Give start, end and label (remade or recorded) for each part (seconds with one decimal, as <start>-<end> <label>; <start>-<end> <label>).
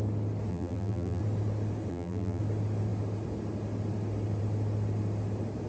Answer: 0.0-0.5 recorded; 0.5-1.2 remade; 1.2-1.9 recorded; 1.9-2.4 remade; 2.4-5.7 recorded